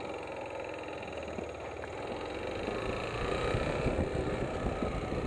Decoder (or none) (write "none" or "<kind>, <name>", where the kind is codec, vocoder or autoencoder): none